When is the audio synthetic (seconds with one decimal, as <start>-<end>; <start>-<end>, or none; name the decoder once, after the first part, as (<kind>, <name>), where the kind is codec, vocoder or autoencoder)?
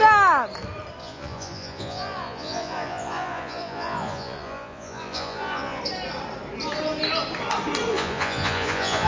1.0-5.8 (vocoder, Vocos); 7.9-9.1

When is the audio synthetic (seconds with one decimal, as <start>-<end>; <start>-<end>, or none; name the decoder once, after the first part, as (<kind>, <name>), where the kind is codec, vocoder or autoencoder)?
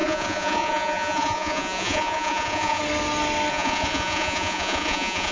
0.0-2.8 (vocoder, Vocos); 3.5-5.3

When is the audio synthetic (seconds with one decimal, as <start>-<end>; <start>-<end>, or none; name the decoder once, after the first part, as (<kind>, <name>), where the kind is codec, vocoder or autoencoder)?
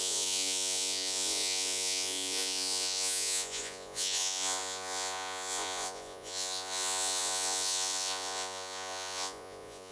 0.0-9.9 (vocoder, Vocos)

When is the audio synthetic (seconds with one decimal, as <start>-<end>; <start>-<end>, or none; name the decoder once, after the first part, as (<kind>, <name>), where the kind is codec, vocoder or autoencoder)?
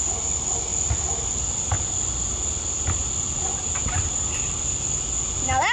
none